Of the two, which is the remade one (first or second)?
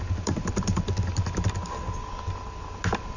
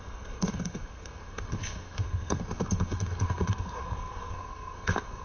second